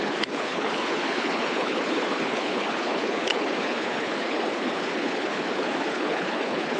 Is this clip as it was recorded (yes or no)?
no